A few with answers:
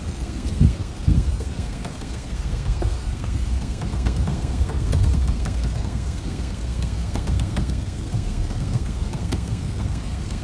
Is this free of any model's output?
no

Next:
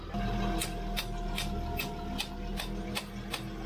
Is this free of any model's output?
yes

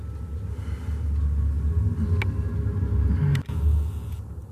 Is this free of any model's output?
yes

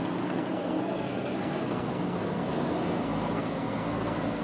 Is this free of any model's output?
no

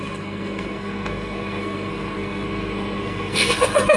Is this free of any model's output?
no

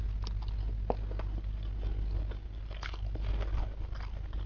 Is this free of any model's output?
yes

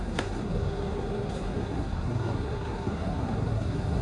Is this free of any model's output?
no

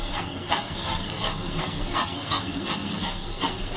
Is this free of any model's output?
no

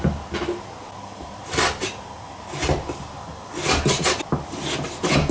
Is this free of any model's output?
yes